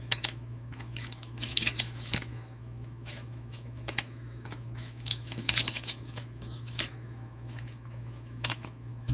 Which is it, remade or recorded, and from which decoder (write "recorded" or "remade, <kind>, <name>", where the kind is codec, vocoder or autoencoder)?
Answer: remade, autoencoder, DAC-VAE